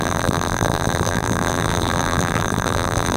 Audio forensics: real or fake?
fake